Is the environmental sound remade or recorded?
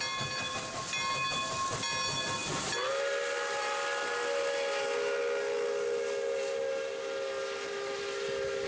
recorded